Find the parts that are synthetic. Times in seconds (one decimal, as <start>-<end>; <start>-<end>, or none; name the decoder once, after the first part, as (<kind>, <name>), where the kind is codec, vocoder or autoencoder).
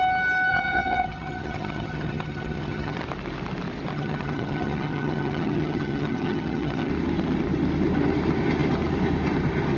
0.5-3.0 (vocoder, HiFi-GAN); 3.9-6.9